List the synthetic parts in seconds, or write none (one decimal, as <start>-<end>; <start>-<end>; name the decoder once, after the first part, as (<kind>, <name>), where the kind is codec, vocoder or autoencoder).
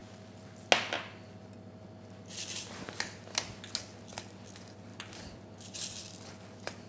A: 4.9-6.3 (vocoder, BigVGAN v2)